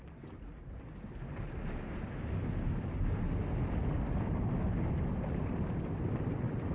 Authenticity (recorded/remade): recorded